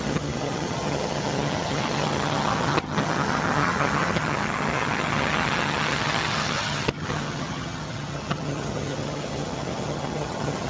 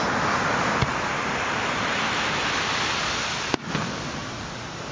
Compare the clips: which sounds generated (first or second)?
first